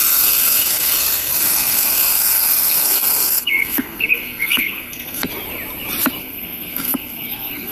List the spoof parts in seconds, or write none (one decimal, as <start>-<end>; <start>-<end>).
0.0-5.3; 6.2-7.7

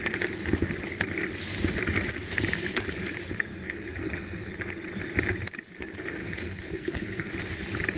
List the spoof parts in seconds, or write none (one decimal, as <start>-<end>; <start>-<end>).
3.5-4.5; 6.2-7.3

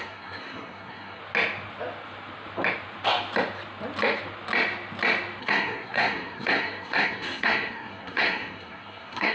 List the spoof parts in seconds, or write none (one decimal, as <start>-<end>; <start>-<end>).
0.0-1.2; 5.4-9.3

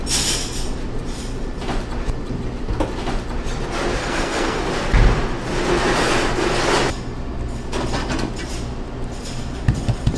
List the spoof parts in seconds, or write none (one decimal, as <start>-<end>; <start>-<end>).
4.0-4.6

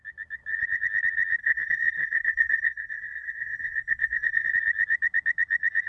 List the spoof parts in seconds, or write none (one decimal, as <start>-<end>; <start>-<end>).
1.4-4.5

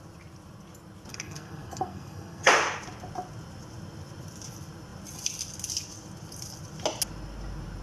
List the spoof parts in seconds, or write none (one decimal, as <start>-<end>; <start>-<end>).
1.1-2.5